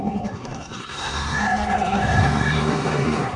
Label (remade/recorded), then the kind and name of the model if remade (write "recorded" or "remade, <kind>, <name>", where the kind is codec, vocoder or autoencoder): remade, codec, SNAC